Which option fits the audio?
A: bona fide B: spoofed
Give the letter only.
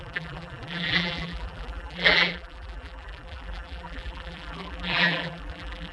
B